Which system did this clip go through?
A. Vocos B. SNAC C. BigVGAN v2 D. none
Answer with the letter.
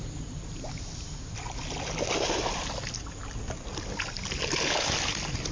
D